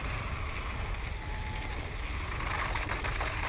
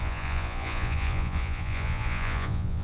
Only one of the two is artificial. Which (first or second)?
second